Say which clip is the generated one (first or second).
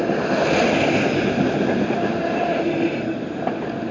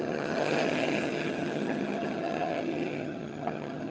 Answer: second